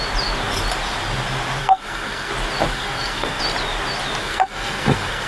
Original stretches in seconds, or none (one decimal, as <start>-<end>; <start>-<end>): 0.0-1.6; 2.3-2.7; 3.4-4.2